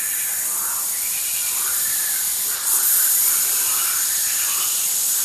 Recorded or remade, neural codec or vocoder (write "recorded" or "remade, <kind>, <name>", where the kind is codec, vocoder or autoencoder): recorded